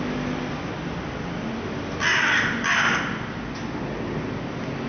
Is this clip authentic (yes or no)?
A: yes